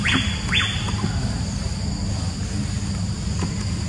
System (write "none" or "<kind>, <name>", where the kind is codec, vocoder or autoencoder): none